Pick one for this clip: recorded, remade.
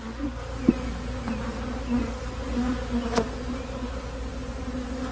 recorded